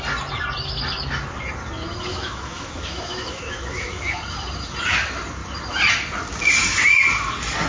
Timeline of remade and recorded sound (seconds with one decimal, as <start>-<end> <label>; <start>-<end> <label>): 0.0-2.1 recorded; 2.1-4.2 remade; 4.2-7.7 recorded